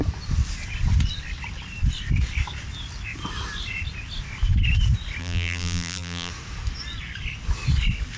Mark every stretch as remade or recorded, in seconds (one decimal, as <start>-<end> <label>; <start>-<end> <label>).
0.0-5.2 recorded; 5.2-6.3 remade; 6.3-8.2 recorded